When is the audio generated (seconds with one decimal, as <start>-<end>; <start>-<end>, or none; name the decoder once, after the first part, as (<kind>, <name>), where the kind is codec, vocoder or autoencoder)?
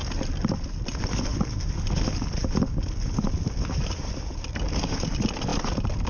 none